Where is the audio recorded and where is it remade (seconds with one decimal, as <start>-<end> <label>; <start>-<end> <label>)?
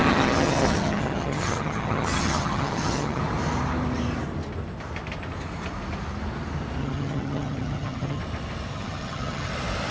0.0-3.2 remade; 3.2-6.8 recorded; 6.8-8.2 remade; 8.2-8.7 recorded; 8.7-9.5 remade; 9.5-9.9 recorded